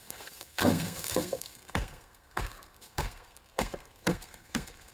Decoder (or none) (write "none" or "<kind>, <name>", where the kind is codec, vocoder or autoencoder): codec, SNAC